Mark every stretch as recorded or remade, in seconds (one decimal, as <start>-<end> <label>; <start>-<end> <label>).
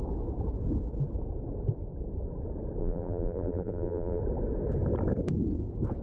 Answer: 0.0-2.8 recorded; 2.8-4.2 remade; 4.2-6.0 recorded